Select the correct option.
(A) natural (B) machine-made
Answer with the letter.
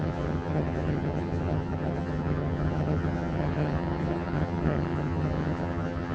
B